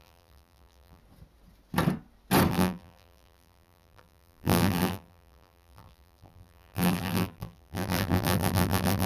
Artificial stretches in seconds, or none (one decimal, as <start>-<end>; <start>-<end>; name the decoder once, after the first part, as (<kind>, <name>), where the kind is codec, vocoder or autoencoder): 0.0-1.0 (vocoder, BigVGAN v2); 2.5-9.1